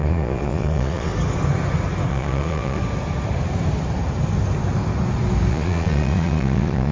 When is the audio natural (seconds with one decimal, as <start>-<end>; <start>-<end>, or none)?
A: 1.1-2.1; 2.8-5.5